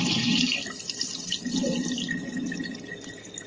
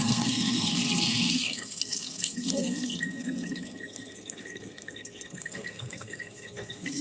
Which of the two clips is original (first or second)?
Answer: first